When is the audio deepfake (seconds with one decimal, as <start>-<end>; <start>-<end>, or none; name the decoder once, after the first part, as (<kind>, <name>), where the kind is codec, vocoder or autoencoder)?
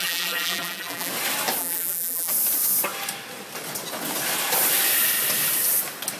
0.0-1.1 (vocoder, BigVGAN v2); 1.6-2.3